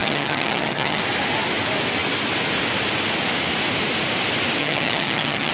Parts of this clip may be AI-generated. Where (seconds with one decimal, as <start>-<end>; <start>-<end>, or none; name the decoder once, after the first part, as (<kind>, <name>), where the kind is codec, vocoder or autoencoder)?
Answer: 0.0-1.0 (vocoder, HiFi-GAN); 4.6-5.5